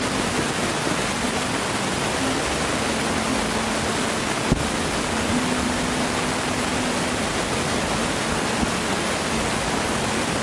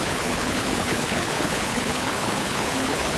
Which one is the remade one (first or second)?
second